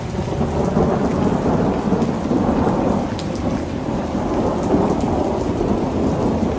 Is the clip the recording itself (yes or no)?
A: yes